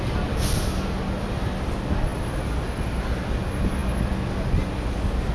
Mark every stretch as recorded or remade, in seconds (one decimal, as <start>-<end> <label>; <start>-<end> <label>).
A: 0.0-5.3 recorded